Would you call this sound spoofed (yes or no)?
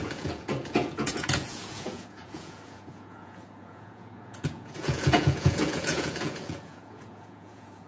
yes